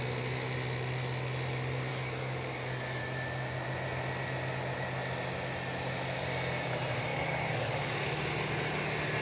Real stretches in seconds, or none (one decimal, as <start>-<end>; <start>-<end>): 0.0-1.9; 3.0-7.1; 7.9-9.2